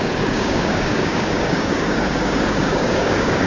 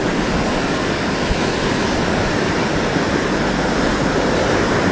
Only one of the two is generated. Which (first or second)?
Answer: first